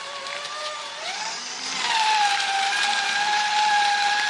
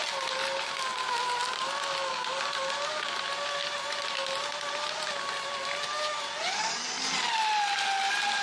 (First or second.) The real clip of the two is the second